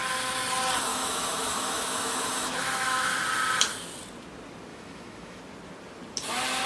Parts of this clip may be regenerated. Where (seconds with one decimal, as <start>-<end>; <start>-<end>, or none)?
0.9-3.2; 4.7-5.4